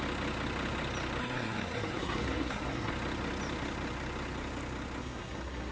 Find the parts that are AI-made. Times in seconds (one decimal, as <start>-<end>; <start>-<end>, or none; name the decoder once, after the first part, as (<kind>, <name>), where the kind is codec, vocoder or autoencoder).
1.2-2.9 (codec, SNAC); 5.0-5.7